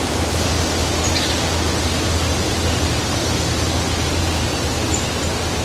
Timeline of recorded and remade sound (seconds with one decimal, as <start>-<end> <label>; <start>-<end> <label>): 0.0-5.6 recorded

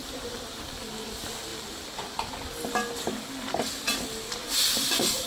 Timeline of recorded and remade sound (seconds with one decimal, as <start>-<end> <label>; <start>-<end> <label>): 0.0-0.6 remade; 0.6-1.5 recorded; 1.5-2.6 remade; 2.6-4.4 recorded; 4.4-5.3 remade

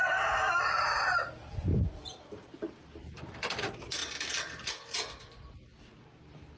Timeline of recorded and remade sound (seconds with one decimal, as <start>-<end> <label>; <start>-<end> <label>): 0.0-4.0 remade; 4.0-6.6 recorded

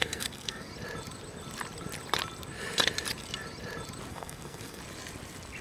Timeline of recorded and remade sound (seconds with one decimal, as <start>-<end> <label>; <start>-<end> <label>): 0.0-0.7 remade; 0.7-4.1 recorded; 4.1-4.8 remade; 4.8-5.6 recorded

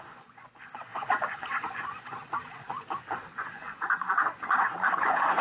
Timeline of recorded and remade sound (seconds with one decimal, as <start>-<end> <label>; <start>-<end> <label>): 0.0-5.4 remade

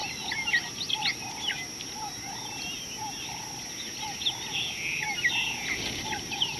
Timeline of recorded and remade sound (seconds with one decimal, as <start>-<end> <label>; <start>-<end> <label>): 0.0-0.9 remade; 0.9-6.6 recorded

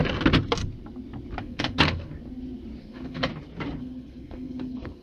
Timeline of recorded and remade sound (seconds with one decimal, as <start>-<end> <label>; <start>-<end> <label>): 0.0-1.4 recorded; 1.4-2.1 remade; 2.1-2.8 recorded; 2.8-3.3 remade; 3.3-3.8 recorded; 3.8-5.0 remade